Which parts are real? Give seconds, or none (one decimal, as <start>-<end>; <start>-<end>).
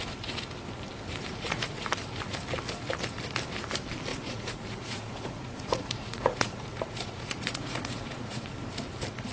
0.0-1.3; 1.9-4.1; 8.5-9.3